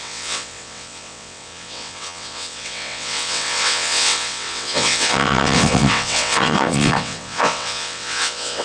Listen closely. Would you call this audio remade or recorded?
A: remade